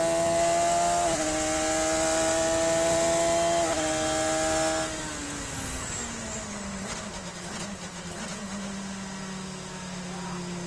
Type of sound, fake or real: real